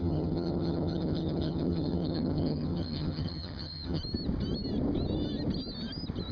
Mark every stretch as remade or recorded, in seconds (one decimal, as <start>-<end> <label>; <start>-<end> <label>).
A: 0.0-4.0 remade; 4.0-6.3 recorded